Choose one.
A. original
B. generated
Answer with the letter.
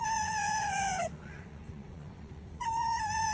B